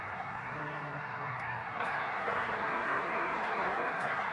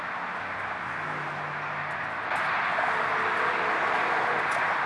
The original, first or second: second